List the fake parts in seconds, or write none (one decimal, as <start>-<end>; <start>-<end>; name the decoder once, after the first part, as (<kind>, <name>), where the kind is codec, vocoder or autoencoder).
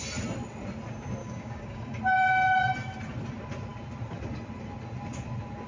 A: 1.2-2.0 (codec, DAC)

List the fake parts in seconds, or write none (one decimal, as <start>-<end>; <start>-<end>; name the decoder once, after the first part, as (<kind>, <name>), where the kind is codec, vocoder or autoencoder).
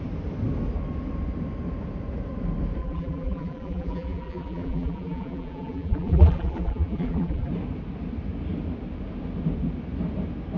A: 2.8-7.5 (vocoder, BigVGAN v2)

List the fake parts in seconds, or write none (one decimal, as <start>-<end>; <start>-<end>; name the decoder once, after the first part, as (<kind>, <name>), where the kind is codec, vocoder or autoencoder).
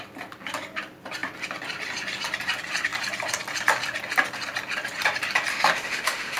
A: 5.5-6.4 (autoencoder, DAC-VAE)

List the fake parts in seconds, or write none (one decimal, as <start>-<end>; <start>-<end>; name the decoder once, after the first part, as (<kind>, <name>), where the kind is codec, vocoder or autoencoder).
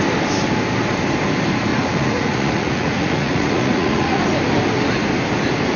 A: 1.7-4.2 (vocoder, Vocos)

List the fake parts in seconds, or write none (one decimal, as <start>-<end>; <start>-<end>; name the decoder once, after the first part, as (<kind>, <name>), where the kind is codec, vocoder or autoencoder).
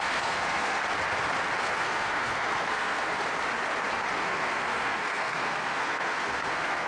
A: 0.0-0.8 (codec, SNAC); 1.6-3.1; 4.2-6.9